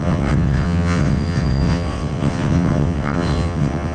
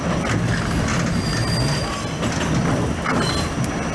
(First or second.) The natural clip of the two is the second